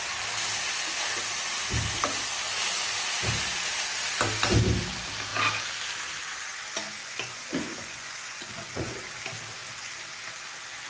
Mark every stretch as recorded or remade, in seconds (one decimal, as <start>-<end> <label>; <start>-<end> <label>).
0.0-7.0 recorded; 7.0-9.0 remade; 9.0-10.9 recorded

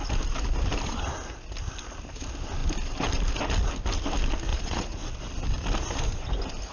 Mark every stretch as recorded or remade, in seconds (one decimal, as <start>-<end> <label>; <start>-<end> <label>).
0.0-4.5 recorded; 4.5-5.1 remade; 5.1-6.7 recorded

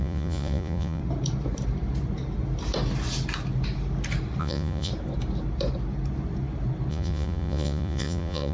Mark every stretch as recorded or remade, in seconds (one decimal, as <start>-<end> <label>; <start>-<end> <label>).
0.0-1.0 remade; 1.0-4.4 recorded; 4.4-4.9 remade; 4.9-6.9 recorded; 6.9-8.5 remade

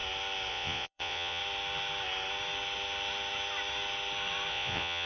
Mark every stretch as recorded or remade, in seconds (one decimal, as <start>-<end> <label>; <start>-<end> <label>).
0.0-0.5 recorded; 0.5-1.4 remade; 1.4-4.5 recorded; 4.5-5.1 remade

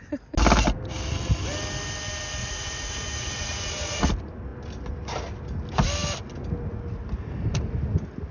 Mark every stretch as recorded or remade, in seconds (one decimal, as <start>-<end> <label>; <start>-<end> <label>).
0.0-2.4 recorded; 2.4-4.1 remade; 4.1-8.3 recorded

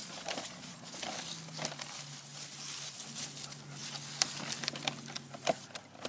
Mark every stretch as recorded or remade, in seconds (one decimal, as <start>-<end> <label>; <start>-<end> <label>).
0.0-1.0 remade; 1.0-6.1 recorded